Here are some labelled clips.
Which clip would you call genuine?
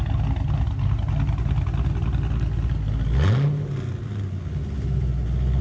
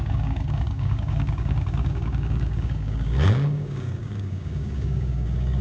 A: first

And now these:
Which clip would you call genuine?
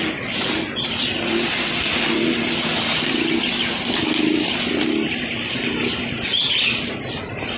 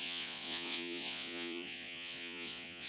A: first